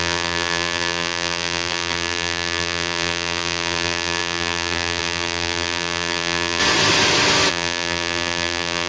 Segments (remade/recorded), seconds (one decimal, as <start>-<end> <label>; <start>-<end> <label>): 0.0-6.6 remade; 6.6-7.5 recorded; 7.5-8.9 remade